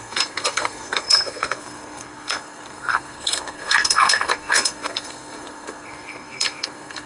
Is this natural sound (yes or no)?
no